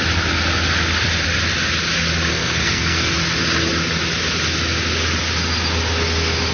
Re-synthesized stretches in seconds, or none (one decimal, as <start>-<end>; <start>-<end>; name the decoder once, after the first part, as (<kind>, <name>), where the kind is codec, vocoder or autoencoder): 2.3-3.1 (codec, SNAC)